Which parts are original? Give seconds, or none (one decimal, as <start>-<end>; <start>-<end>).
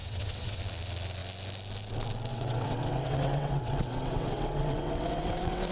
0.6-2.3